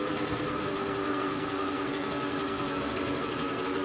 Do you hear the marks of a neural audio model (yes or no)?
yes